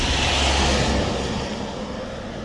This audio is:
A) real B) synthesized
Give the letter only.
A